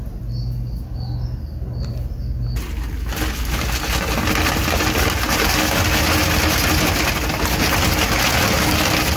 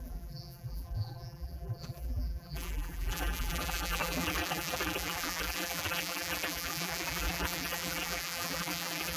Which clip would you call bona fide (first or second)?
first